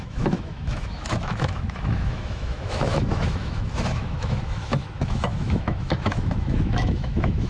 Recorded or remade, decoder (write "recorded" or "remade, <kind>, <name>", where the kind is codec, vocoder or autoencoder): remade, autoencoder, DAC-VAE